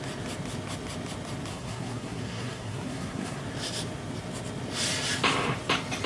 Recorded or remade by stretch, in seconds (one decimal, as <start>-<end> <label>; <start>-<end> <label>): 0.0-1.5 recorded; 1.5-3.4 remade; 3.4-6.1 recorded